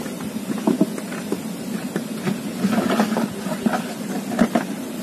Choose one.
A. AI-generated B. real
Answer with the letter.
B